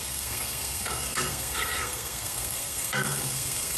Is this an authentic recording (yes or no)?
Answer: no